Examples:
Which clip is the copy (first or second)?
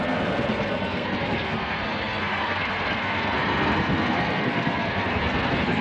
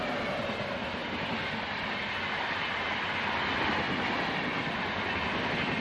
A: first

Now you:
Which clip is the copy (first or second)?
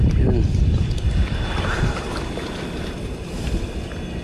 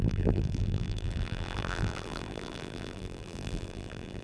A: second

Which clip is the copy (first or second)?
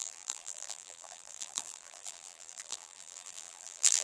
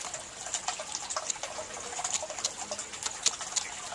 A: first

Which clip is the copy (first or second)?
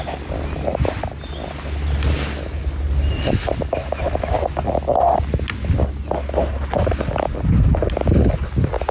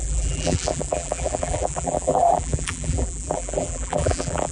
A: second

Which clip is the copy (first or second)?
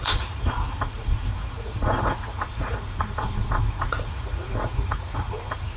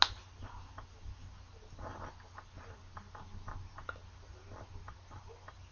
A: first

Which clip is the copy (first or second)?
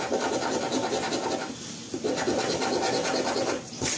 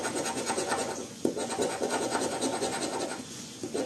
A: second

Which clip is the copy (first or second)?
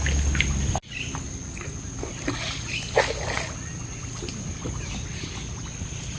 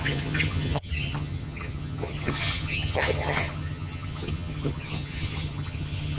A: second